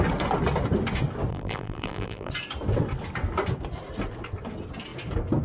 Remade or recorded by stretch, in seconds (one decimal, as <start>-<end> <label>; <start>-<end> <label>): 0.0-1.3 recorded; 1.3-2.3 remade; 2.3-5.4 recorded